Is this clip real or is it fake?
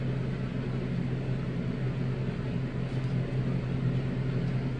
real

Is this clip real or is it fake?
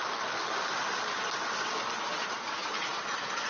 real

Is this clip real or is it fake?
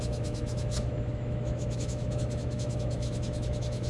fake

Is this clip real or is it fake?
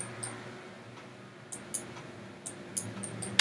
real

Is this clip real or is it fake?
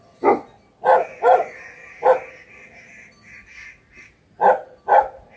real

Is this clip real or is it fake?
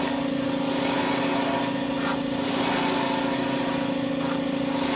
real